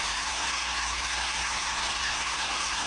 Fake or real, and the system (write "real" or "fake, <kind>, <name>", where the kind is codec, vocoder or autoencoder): fake, codec, SNAC